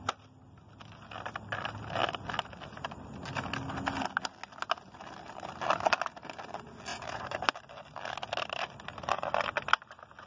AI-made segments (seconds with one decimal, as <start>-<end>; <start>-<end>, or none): 6.9-7.6